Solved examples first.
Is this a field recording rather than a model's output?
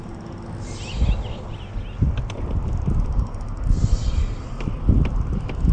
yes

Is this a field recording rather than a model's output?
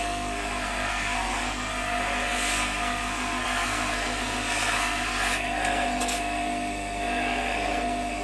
no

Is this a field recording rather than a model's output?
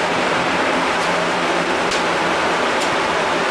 no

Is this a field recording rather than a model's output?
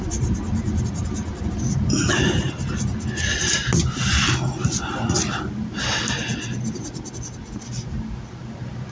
yes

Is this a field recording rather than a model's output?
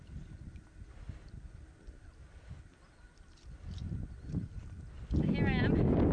yes